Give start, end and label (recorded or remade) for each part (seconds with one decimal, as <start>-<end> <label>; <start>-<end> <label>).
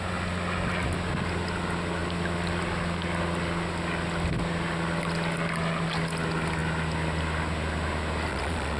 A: 0.0-8.3 recorded; 8.3-8.8 remade